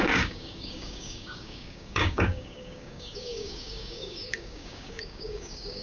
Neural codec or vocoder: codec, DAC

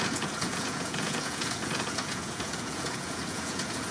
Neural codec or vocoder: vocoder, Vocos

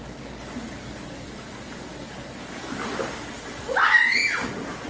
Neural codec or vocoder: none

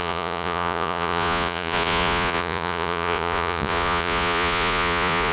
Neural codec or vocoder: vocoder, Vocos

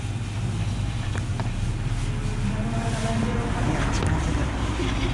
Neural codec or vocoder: none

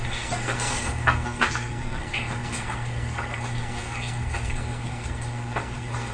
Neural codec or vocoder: codec, SNAC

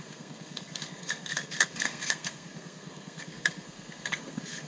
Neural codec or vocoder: codec, SNAC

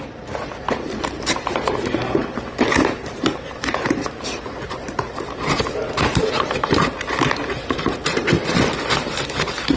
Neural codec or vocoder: vocoder, BigVGAN v2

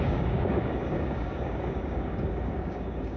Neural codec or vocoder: codec, DAC